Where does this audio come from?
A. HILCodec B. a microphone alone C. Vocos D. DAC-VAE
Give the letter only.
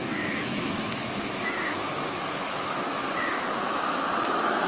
D